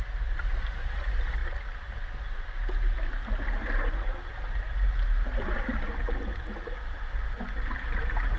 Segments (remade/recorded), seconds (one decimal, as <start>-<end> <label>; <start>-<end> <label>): 0.0-8.4 recorded